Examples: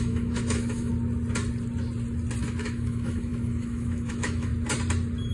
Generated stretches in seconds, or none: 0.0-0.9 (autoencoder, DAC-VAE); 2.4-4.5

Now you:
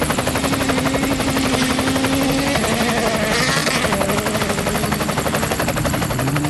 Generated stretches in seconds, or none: none

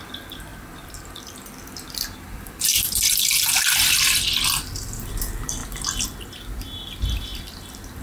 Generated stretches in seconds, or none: 0.0-8.0 (vocoder, BigVGAN v2)

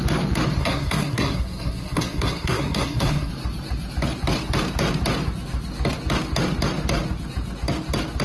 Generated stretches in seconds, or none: 0.6-3.3 (codec, SNAC)

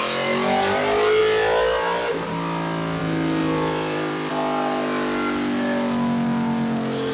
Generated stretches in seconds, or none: 3.4-4.3 (vocoder, BigVGAN v2)